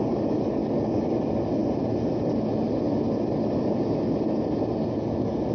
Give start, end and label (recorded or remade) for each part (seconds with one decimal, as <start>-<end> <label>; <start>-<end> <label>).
0.0-5.5 recorded